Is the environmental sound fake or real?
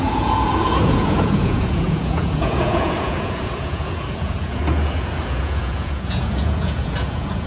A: fake